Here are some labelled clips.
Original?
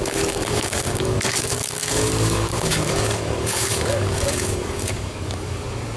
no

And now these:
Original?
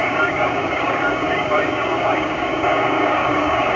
no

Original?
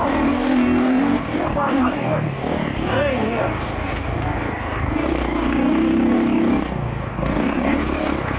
no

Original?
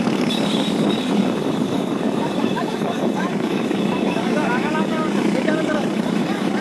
no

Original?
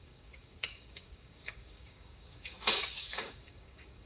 no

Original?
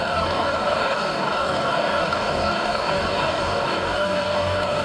no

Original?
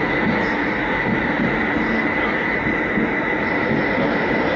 yes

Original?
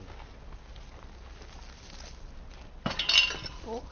yes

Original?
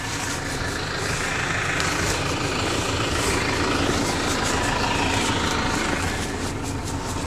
yes